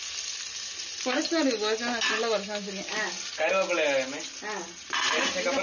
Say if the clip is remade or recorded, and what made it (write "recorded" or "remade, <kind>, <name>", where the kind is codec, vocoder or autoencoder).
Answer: recorded